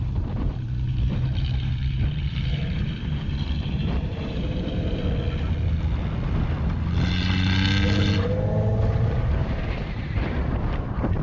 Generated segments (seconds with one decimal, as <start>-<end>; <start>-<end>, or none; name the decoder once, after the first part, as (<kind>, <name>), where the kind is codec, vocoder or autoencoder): 0.0-5.0 (vocoder, BigVGAN v2); 9.4-11.2